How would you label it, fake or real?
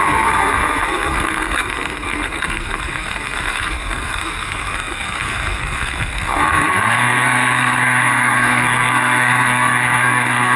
fake